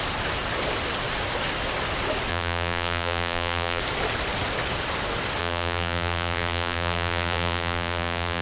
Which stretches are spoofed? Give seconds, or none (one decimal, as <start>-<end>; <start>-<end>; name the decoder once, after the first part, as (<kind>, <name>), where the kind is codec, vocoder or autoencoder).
2.3-3.8 (vocoder, BigVGAN v2); 5.4-8.4